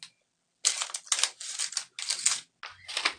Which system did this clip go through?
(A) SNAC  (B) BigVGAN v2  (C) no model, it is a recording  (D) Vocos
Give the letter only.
C